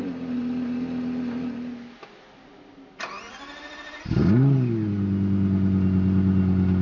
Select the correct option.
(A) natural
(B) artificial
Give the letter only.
A